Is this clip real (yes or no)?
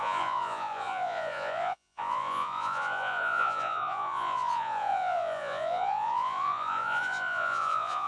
no